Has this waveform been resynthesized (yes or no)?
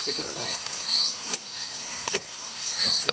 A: yes